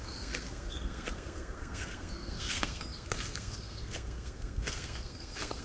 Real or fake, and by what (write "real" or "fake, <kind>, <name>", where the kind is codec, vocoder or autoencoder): fake, codec, SNAC